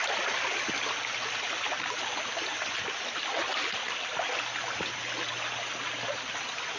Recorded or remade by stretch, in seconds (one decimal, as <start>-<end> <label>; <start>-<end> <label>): 0.0-6.8 recorded